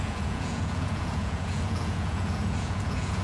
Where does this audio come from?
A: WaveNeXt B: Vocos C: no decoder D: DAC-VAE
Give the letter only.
B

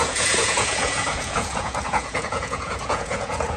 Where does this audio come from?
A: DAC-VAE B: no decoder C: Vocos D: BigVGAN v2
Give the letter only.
C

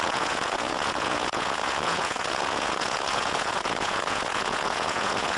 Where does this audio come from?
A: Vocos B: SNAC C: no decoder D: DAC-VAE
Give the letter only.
A